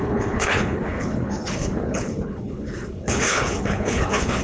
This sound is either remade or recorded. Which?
remade